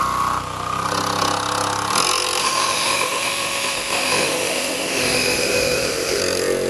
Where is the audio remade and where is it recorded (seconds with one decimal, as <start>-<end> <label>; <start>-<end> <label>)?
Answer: 0.0-2.4 recorded; 2.4-6.2 remade; 6.2-6.7 recorded